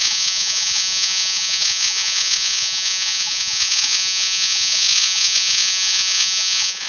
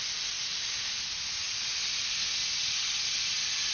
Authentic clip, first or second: second